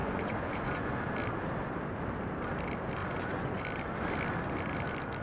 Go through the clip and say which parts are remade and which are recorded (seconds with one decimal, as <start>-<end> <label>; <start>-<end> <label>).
0.0-0.9 remade; 0.9-3.0 recorded; 3.0-3.6 remade; 3.6-5.2 recorded